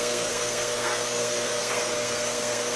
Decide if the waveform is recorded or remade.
remade